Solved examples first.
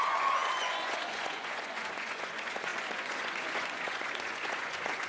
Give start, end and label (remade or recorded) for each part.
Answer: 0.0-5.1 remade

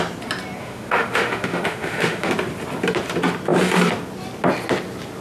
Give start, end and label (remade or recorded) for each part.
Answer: 0.0-0.6 recorded; 0.6-2.3 remade; 2.3-5.2 recorded

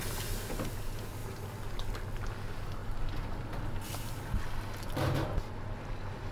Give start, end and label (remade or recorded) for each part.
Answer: 0.0-6.3 recorded

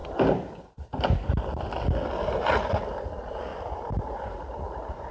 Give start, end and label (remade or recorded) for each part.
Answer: 0.0-3.1 recorded; 3.1-3.5 remade; 3.5-4.6 recorded; 4.6-5.1 remade

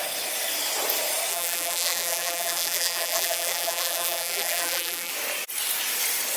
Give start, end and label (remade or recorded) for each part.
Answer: 0.0-1.3 recorded; 1.3-5.1 remade; 5.1-6.4 recorded

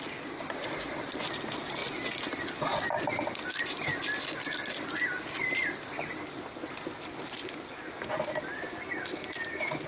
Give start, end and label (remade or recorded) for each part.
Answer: 0.0-9.9 recorded